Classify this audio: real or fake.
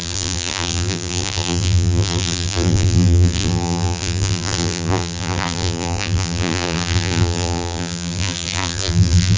fake